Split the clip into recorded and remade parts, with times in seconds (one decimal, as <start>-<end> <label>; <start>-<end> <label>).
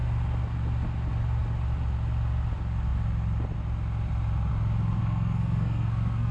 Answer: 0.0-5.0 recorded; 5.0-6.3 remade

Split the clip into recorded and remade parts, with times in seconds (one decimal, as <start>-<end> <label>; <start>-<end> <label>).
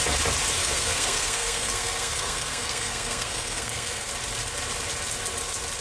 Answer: 0.0-0.6 recorded; 0.6-4.1 remade; 4.1-5.8 recorded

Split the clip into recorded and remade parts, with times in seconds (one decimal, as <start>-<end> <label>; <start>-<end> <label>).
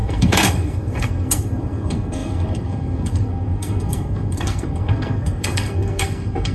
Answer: 0.0-6.5 remade